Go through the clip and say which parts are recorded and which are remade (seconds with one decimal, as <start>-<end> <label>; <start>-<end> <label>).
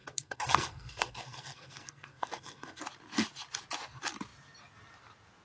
0.0-2.8 remade; 2.8-5.4 recorded